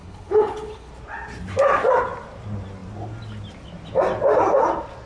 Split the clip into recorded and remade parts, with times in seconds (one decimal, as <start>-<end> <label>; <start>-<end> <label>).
0.0-0.9 remade; 0.9-5.1 recorded